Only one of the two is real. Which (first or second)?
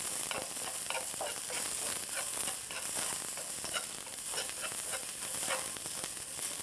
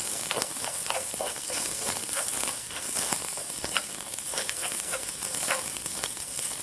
first